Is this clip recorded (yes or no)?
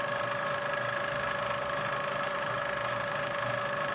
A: yes